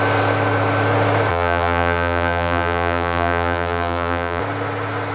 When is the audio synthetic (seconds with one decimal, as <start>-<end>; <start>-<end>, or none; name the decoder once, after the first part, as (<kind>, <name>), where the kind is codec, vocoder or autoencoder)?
1.3-4.4 (vocoder, BigVGAN v2)